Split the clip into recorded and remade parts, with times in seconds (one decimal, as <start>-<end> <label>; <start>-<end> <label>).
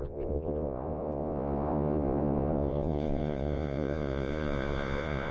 0.0-5.3 remade